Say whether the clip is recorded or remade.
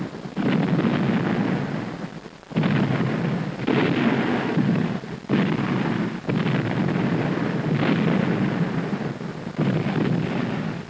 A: recorded